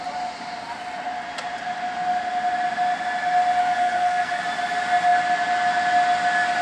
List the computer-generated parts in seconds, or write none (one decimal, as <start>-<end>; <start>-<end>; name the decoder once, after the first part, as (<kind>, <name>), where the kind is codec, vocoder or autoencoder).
3.6-4.4 (codec, SNAC)